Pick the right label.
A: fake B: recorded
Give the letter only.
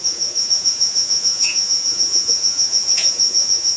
A